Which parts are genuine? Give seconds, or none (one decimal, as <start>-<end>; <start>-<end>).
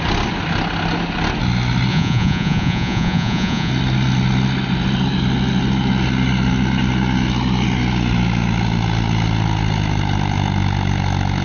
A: 0.0-1.9; 3.7-11.4